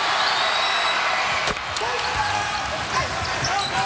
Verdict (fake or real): real